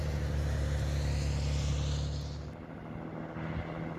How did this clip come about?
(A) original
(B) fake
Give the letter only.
A